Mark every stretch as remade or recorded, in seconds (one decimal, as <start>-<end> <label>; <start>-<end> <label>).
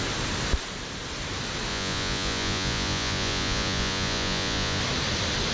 0.0-1.7 recorded; 1.7-4.8 remade; 4.8-5.5 recorded